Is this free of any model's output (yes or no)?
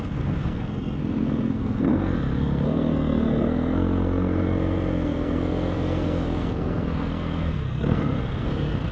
no